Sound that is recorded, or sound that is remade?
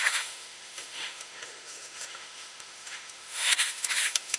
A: remade